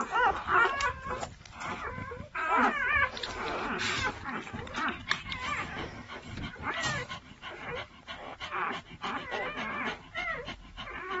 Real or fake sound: fake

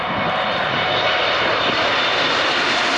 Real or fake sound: fake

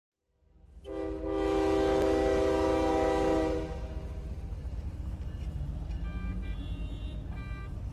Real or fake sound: real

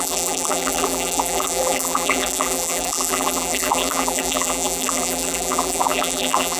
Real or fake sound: fake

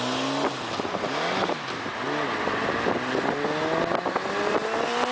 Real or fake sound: real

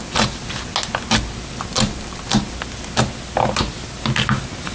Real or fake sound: real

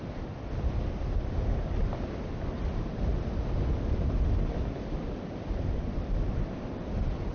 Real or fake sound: real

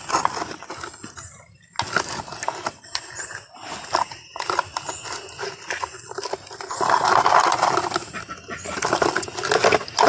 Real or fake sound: real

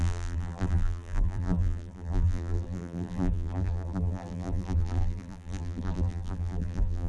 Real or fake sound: fake